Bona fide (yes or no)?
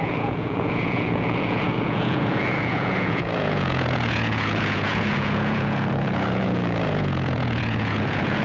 no